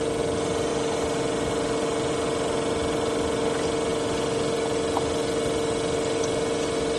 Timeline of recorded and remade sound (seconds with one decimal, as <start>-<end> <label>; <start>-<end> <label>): 0.0-7.0 recorded